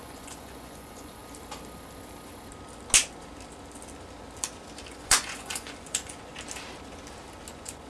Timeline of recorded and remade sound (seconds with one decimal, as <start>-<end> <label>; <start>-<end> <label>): 0.0-1.2 remade; 1.2-4.9 recorded; 4.9-6.3 remade; 6.3-7.5 recorded; 7.5-7.9 remade